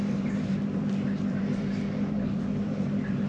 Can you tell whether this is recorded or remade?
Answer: remade